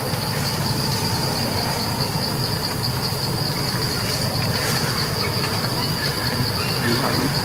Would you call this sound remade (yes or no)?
no